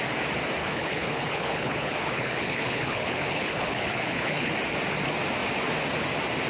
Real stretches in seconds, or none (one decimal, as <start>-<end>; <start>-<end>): 0.0-0.6; 4.5-6.5